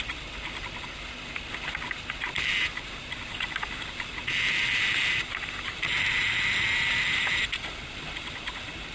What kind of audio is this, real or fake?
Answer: real